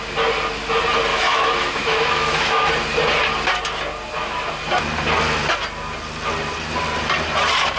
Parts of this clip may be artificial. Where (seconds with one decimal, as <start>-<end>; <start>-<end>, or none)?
1.1-2.7